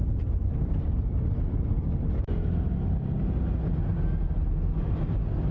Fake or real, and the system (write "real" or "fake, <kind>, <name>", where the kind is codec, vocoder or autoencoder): real